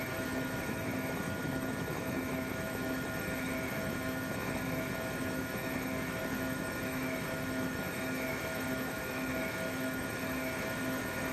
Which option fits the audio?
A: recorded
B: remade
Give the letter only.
B